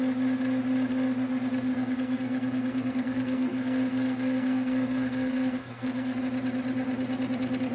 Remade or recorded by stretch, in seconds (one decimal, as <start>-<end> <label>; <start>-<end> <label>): 0.0-1.7 recorded; 1.7-6.2 remade; 6.2-7.7 recorded